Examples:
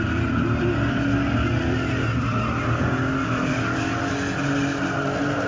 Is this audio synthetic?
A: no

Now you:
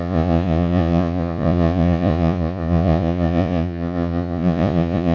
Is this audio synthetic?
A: yes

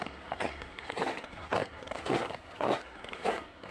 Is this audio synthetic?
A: yes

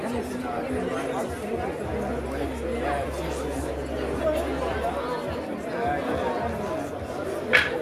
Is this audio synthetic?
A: no